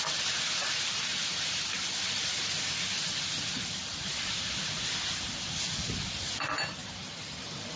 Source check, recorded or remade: recorded